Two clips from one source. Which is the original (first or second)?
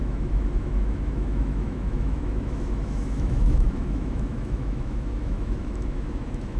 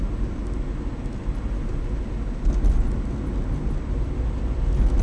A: second